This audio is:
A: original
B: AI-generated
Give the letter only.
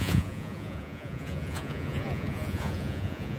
B